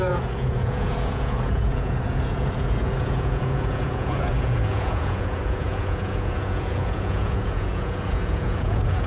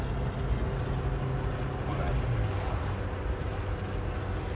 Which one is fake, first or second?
first